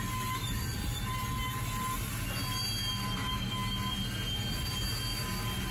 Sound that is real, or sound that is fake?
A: real